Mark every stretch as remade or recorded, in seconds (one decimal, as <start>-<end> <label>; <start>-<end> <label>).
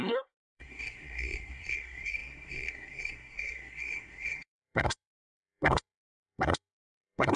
0.0-7.4 remade